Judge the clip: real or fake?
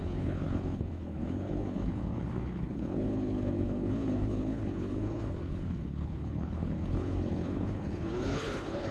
fake